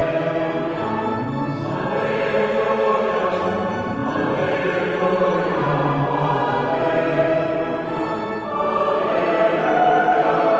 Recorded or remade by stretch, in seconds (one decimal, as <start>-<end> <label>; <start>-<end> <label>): 0.0-3.2 recorded; 3.2-6.4 remade; 6.4-9.0 recorded; 9.0-10.6 remade